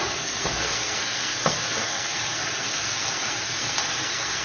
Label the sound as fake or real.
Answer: fake